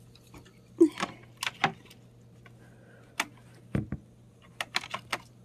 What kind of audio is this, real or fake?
real